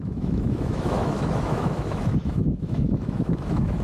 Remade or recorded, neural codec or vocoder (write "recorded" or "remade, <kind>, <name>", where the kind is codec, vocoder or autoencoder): remade, autoencoder, DAC-VAE